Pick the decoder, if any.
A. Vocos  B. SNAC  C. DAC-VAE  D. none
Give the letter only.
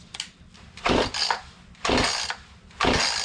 D